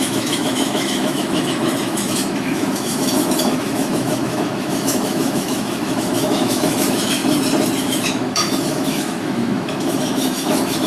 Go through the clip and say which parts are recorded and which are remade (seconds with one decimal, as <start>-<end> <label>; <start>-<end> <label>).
0.0-7.2 remade; 7.2-7.8 recorded; 7.8-10.9 remade